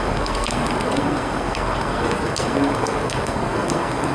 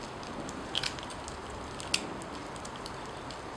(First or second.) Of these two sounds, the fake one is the first